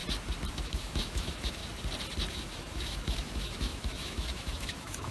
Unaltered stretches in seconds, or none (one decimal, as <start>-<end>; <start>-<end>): 0.0-0.5; 1.6-2.3